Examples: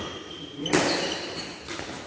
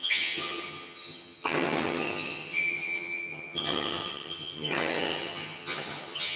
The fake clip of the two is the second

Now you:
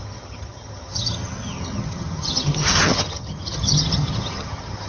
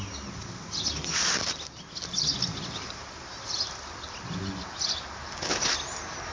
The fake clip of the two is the first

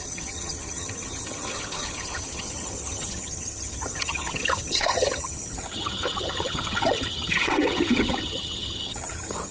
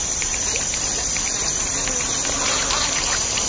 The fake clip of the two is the first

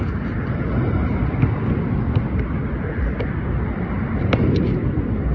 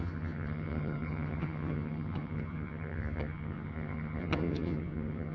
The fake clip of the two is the second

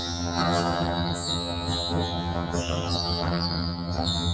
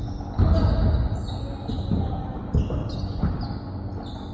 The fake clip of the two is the first